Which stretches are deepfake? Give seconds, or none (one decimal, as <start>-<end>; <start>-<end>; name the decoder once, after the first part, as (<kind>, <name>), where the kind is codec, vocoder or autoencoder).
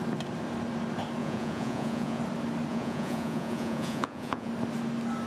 1.2-2.2 (vocoder, Vocos); 2.7-4.5